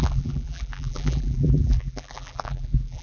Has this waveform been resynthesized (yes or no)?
yes